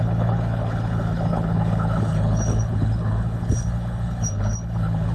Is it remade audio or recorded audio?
remade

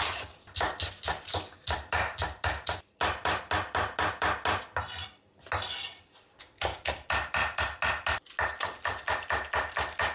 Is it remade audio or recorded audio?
recorded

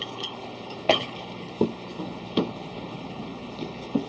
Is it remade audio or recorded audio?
remade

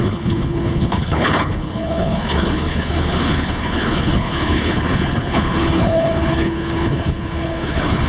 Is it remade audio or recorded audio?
remade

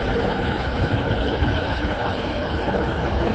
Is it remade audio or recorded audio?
remade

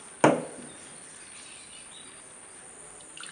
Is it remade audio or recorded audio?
recorded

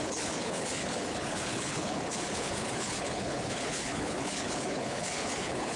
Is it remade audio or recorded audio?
remade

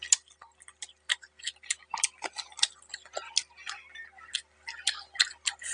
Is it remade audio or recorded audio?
recorded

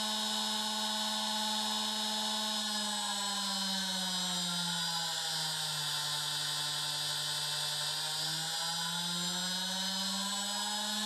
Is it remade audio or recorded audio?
recorded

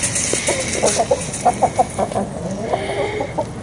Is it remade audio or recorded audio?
recorded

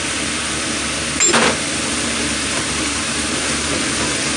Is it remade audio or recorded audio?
recorded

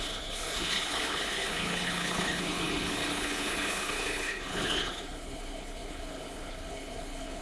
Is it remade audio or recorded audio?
remade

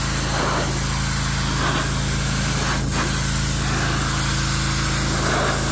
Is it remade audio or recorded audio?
recorded